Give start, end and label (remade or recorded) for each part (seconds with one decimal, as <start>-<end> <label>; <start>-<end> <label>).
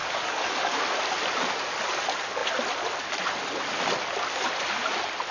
0.0-0.8 remade; 0.8-5.3 recorded